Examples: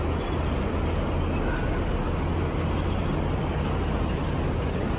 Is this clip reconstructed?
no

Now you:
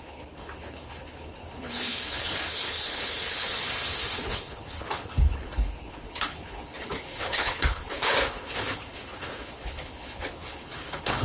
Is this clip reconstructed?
yes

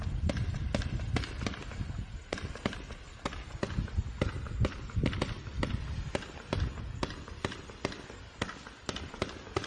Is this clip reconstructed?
no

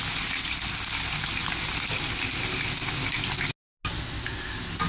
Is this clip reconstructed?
no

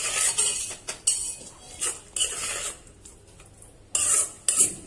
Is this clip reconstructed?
no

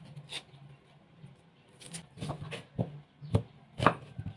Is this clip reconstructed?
no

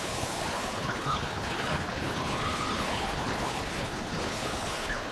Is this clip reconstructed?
yes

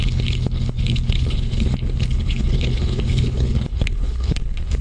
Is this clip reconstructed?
yes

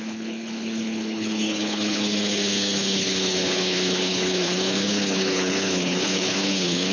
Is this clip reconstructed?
yes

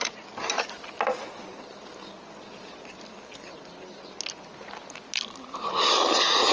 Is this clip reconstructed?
no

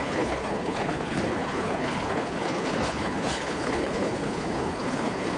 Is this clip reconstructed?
yes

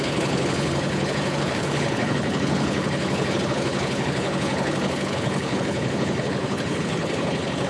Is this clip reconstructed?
yes